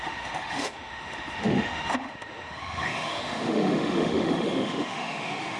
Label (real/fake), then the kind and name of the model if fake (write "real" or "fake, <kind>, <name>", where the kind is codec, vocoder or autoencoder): fake, autoencoder, DAC-VAE